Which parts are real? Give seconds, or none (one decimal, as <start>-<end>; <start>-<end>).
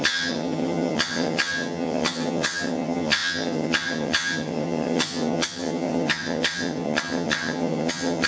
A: none